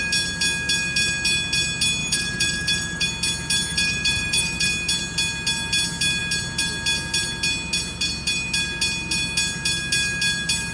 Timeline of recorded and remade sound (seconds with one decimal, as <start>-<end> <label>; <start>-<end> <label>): 0.0-2.0 recorded; 2.0-3.1 remade; 3.1-3.7 recorded; 3.7-4.7 remade; 4.7-10.7 recorded

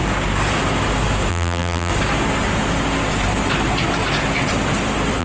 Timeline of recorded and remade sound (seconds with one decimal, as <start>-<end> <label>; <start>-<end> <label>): 0.0-1.3 recorded; 1.3-1.9 remade; 1.9-5.2 recorded

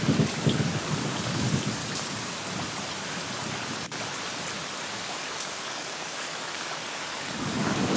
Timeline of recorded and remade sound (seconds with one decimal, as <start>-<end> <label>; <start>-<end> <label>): 0.0-1.8 remade; 1.8-4.9 recorded; 4.9-8.0 remade

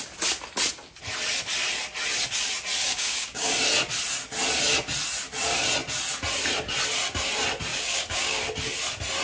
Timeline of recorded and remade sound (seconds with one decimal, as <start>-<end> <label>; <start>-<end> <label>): 0.0-2.8 recorded; 2.8-3.5 remade; 3.5-7.7 recorded; 7.7-8.4 remade; 8.4-9.2 recorded

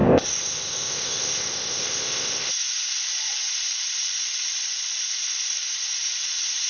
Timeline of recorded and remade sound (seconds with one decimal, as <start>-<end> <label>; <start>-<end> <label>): 0.0-2.5 remade; 2.5-6.7 recorded

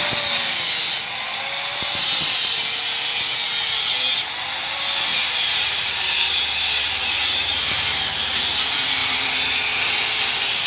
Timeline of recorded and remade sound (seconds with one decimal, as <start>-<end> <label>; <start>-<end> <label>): 0.0-1.7 recorded; 1.7-2.6 remade; 2.6-5.1 recorded; 5.1-8.6 remade; 8.6-9.0 recorded; 9.0-9.6 remade; 9.6-10.7 recorded

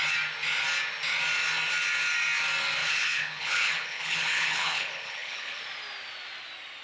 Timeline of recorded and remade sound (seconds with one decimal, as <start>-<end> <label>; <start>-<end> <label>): 0.0-2.8 recorded; 2.8-5.6 remade; 5.6-6.8 recorded

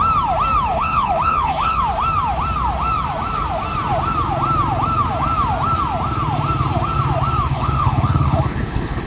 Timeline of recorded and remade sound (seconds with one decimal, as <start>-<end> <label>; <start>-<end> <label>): 0.0-0.7 recorded; 0.7-1.8 remade; 1.8-7.5 recorded; 7.5-9.1 remade